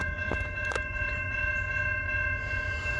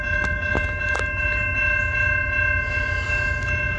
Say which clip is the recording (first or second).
second